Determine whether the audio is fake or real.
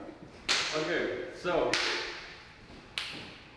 real